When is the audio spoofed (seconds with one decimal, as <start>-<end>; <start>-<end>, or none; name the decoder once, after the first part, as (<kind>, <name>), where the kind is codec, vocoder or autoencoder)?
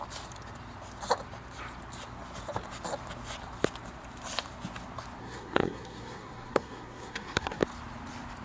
5.2-7.6 (codec, SNAC)